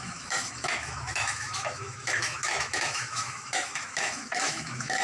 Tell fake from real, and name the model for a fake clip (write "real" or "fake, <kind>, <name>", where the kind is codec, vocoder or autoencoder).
fake, autoencoder, DAC-VAE